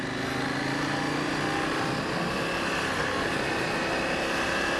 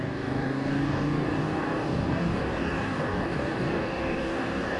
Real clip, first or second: first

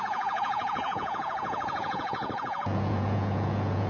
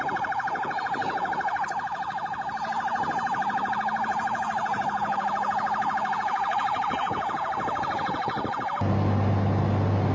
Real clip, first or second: second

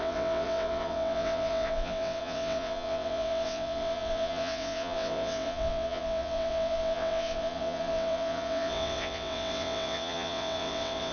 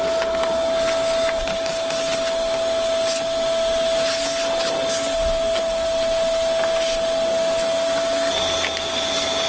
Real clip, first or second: second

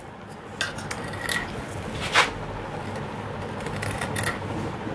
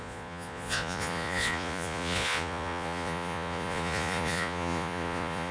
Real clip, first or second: first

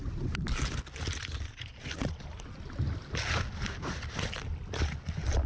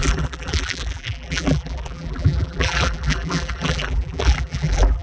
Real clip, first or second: first